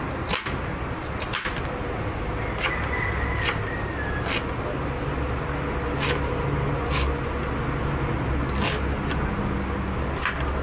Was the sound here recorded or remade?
recorded